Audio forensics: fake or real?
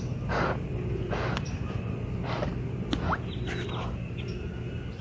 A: real